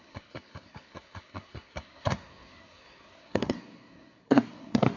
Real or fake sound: fake